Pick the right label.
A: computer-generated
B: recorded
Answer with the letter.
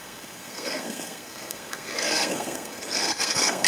A